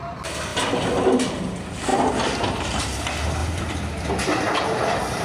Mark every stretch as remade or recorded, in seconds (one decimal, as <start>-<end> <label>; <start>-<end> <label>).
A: 0.0-3.4 recorded; 3.4-4.1 remade; 4.1-5.2 recorded